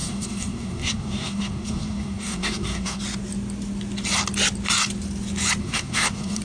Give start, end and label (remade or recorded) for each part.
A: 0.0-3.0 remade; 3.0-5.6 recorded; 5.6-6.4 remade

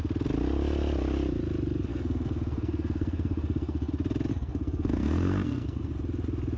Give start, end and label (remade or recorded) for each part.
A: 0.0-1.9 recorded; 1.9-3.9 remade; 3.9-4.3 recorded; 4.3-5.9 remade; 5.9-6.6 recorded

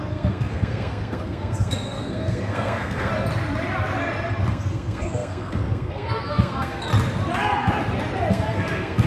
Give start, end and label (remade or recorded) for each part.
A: 0.0-3.1 remade; 3.1-4.5 recorded; 4.5-6.9 remade; 6.9-8.3 recorded; 8.3-9.1 remade